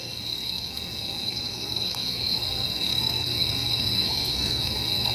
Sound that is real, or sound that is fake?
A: fake